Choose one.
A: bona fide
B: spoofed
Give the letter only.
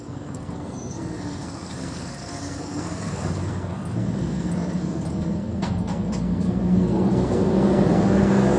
B